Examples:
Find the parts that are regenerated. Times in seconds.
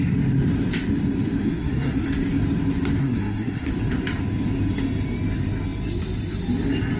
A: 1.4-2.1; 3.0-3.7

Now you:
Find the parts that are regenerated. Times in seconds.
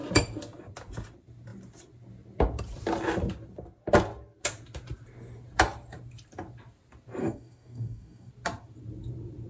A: 7.2-8.3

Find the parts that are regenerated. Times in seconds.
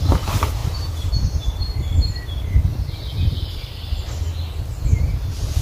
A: none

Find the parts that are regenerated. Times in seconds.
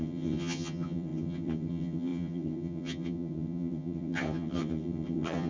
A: 0.0-5.5